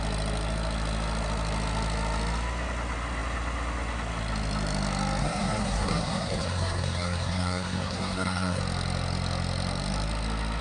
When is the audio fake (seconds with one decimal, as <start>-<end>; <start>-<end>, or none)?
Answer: 5.2-8.6